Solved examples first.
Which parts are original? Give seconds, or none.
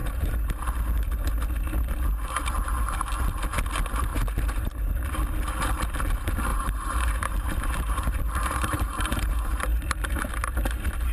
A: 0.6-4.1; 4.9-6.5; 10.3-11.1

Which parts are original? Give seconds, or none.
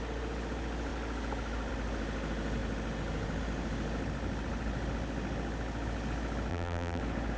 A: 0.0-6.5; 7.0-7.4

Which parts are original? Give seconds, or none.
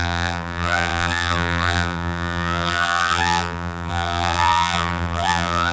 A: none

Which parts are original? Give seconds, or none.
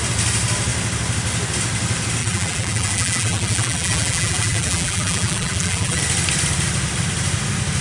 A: 0.0-2.2; 6.0-7.8